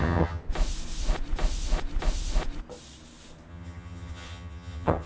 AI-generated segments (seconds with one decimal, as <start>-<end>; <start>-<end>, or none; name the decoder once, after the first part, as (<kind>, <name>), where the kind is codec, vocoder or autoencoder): 0.0-0.4 (vocoder, HiFi-GAN); 3.5-5.1